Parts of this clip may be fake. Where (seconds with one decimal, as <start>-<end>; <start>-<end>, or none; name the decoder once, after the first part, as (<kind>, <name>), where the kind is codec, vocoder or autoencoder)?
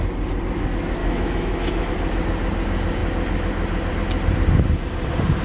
1.0-1.9 (autoencoder, DAC-VAE)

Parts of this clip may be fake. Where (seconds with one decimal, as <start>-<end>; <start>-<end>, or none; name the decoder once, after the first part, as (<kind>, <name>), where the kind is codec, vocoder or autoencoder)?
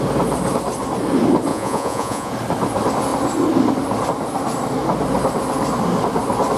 1.5-2.3 (vocoder, Vocos)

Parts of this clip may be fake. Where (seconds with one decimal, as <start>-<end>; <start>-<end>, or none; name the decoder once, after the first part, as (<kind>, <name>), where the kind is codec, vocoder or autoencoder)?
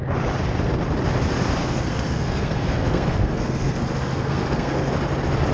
1.6-4.9 (codec, SNAC)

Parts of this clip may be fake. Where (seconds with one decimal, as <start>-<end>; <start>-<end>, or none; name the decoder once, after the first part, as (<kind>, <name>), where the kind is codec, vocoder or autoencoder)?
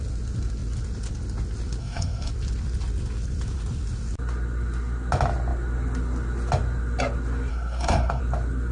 1.8-2.3 (codec, SNAC); 7.5-8.2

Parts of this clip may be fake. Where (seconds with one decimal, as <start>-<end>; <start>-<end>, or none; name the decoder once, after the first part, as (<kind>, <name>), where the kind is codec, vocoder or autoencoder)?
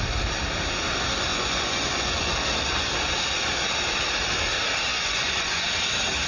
1.3-2.3 (vocoder, Vocos); 4.9-5.7